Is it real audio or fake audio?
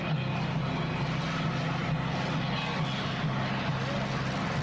real